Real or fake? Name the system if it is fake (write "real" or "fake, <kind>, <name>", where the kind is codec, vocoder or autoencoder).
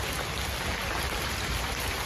real